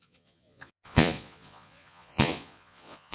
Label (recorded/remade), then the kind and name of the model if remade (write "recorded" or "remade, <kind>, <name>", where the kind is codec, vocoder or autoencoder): remade, vocoder, Vocos